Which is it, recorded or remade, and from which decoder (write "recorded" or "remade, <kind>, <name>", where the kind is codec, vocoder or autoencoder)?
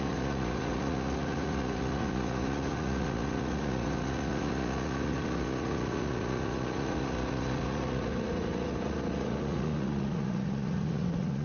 remade, vocoder, Vocos